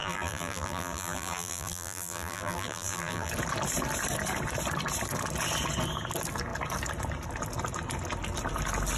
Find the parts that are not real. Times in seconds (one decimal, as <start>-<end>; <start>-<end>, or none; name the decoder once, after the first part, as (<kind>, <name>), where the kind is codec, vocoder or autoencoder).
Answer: 0.0-3.3 (vocoder, BigVGAN v2)